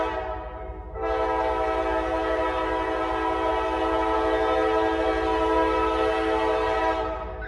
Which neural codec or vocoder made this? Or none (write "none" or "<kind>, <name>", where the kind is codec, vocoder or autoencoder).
none